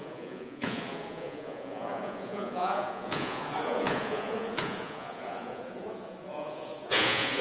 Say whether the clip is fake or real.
fake